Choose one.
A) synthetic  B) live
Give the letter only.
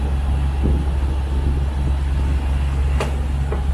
B